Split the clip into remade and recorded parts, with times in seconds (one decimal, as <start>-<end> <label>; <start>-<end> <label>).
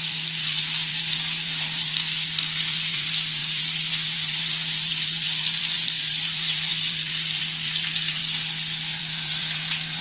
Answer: 0.0-8.2 remade; 8.2-9.0 recorded; 9.0-10.0 remade